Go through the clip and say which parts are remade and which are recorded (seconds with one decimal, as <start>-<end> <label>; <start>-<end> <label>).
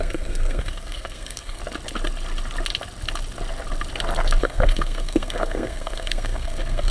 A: 0.0-1.6 remade; 1.6-4.4 recorded; 4.4-6.9 remade